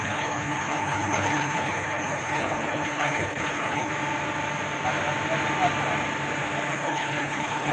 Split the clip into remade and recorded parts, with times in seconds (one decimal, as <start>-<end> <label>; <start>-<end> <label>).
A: 0.0-3.9 remade; 3.9-6.7 recorded; 6.7-7.7 remade